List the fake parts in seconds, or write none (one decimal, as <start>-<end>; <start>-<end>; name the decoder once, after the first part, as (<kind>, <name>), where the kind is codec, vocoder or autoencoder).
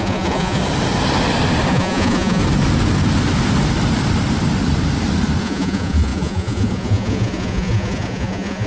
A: 0.0-0.6 (vocoder, Vocos); 1.7-2.4; 5.4-8.7